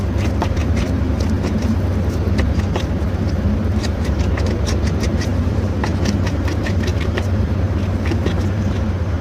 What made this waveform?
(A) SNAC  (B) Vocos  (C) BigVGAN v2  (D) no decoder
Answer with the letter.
C